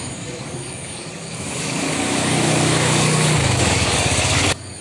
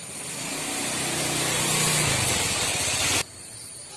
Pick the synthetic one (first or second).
first